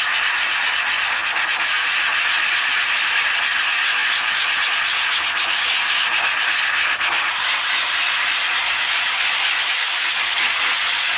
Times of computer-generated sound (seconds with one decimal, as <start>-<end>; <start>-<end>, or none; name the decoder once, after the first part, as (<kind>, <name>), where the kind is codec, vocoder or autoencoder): none

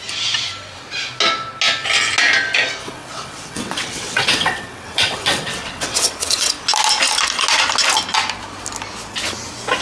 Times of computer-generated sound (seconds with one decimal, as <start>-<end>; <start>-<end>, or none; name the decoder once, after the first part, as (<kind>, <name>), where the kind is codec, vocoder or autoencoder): 2.8-6.5 (vocoder, WaveNeXt)